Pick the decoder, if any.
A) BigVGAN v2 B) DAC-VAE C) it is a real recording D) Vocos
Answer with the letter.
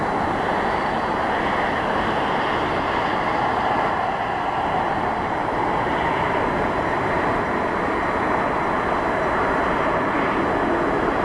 C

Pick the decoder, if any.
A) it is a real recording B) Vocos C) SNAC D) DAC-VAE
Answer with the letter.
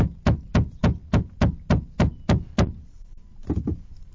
A